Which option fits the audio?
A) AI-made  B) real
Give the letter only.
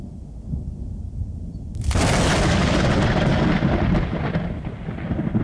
B